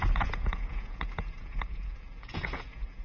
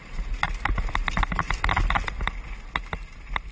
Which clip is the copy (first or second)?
first